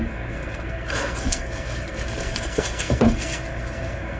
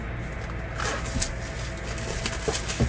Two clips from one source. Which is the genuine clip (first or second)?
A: second